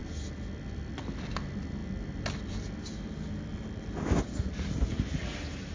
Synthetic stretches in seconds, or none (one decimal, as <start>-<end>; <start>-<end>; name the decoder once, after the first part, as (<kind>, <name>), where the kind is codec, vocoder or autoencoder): none